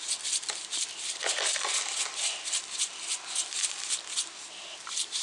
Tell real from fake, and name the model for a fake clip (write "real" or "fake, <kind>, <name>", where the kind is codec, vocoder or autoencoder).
real